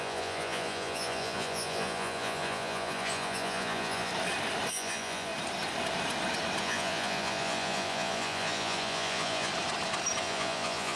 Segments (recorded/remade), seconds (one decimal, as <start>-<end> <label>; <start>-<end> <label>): 0.0-4.1 remade; 4.1-4.7 recorded; 4.7-5.3 remade; 5.3-6.6 recorded; 6.6-9.5 remade; 9.5-10.2 recorded; 10.2-11.0 remade